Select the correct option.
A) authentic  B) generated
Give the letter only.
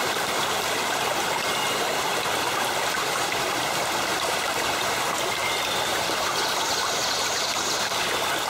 B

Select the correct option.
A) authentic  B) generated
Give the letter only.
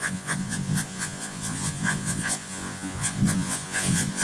B